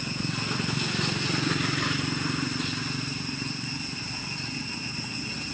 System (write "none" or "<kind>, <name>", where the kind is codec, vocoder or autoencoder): none